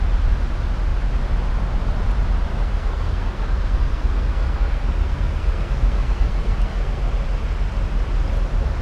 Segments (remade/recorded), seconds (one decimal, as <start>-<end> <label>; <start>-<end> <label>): 0.0-2.5 recorded; 2.5-7.0 remade; 7.0-8.8 recorded